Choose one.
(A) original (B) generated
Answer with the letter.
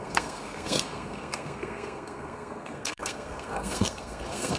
B